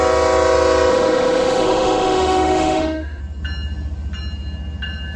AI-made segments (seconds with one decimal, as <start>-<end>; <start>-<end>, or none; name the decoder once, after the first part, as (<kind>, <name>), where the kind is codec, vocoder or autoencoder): 0.9-3.2 (autoencoder, DAC-VAE)